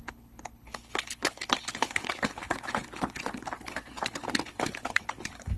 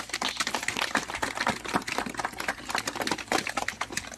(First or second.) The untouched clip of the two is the second